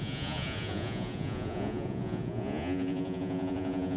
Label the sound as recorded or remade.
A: remade